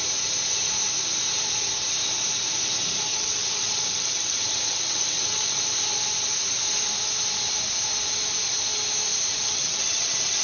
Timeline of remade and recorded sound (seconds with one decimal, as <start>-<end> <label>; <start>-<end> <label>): 0.0-3.1 recorded; 3.1-5.6 remade; 5.6-9.3 recorded; 9.3-10.4 remade